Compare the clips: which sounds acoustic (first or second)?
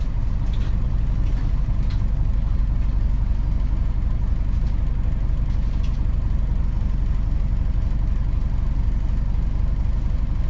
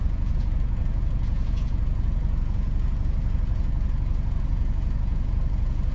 first